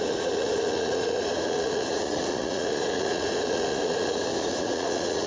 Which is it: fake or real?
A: fake